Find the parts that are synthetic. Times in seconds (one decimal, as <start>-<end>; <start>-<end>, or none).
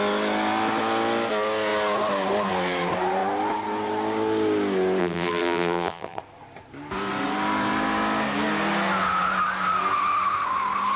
5.0-6.2